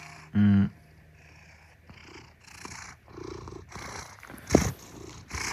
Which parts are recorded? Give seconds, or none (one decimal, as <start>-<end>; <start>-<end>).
0.0-5.5

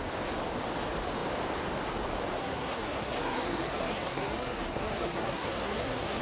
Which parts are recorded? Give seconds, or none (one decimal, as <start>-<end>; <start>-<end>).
0.0-2.4

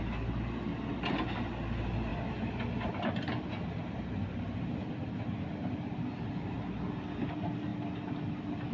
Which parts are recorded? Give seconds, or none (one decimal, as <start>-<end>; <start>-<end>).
0.0-8.7

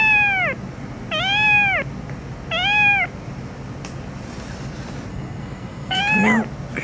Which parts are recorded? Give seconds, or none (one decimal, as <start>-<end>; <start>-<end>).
0.0-5.1; 6.0-6.8

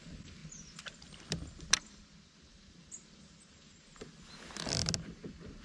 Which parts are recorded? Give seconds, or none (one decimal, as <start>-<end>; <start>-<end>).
0.0-5.6

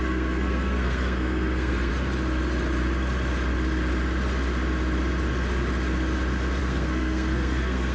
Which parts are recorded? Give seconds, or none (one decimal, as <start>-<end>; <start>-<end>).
1.9-6.6

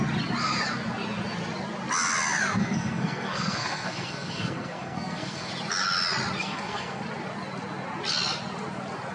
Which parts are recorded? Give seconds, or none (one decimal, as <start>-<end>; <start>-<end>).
0.0-2.6; 5.5-6.4; 7.0-9.1